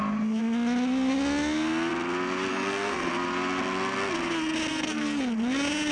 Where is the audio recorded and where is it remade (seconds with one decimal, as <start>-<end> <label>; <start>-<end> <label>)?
0.0-2.5 recorded; 2.5-3.1 remade; 3.1-4.7 recorded; 4.7-5.2 remade; 5.2-5.9 recorded